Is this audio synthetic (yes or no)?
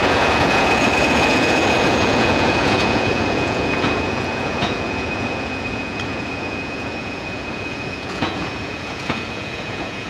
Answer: yes